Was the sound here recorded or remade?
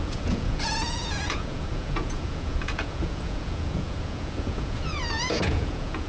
remade